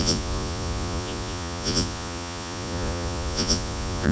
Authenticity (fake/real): fake